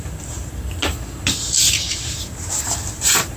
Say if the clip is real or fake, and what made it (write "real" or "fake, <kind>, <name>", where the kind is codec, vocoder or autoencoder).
real